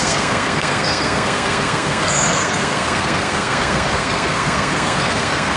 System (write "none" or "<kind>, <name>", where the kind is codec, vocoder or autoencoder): codec, SNAC